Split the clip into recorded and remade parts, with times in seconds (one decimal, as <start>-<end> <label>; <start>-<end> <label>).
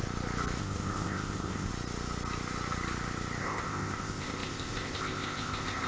0.0-0.6 recorded; 0.6-1.7 remade; 1.7-3.4 recorded; 3.4-5.9 remade